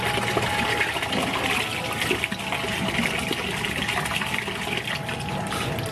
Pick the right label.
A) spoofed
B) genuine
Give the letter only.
B